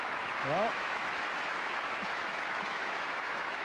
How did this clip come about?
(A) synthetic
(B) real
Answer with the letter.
A